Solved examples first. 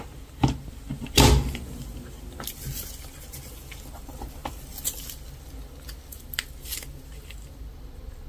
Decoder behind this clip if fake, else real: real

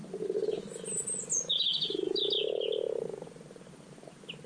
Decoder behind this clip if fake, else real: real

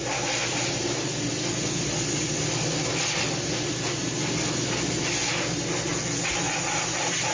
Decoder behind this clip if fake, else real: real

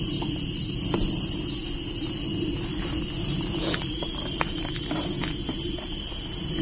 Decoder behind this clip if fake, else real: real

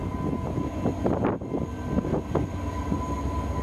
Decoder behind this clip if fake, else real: real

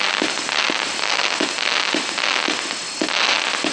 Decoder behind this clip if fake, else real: real